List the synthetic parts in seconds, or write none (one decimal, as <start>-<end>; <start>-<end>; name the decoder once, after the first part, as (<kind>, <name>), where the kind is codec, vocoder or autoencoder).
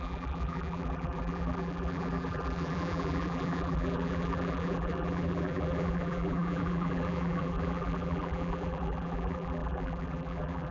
0.0-10.7 (vocoder, BigVGAN v2)